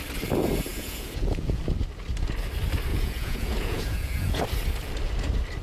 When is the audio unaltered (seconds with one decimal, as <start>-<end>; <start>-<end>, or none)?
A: 0.0-0.7; 1.6-2.9; 4.4-5.6